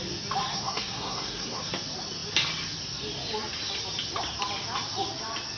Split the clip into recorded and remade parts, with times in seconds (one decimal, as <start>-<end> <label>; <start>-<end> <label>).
0.0-0.5 recorded; 0.5-1.6 remade; 1.6-5.6 recorded